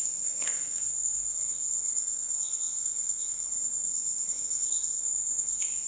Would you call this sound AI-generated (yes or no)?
yes